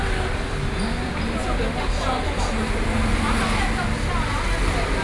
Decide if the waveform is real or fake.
real